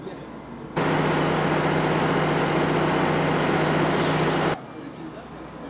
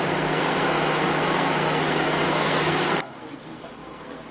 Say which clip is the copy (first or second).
second